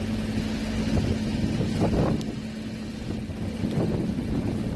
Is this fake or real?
real